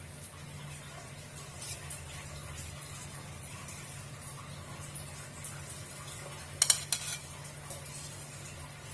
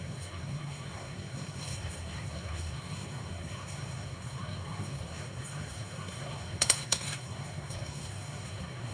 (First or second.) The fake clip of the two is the second